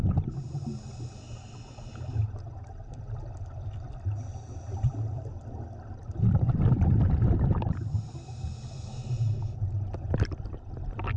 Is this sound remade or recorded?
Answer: recorded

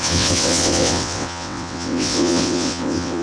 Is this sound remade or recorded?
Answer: remade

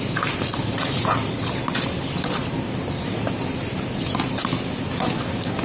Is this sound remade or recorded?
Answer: recorded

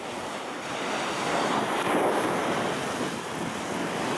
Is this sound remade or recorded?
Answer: recorded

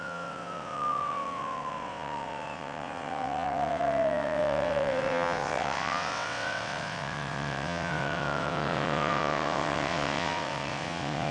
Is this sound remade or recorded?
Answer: remade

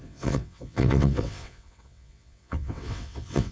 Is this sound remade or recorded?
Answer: remade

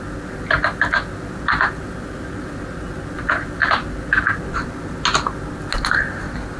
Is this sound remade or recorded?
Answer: recorded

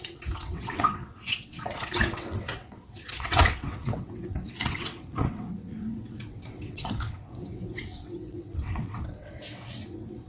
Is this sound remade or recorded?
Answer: remade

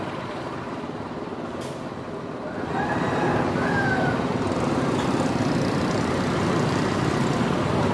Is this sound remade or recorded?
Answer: recorded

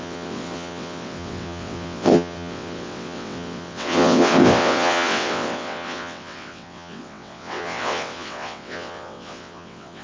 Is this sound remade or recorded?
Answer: remade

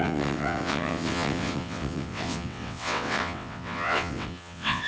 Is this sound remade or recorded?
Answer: remade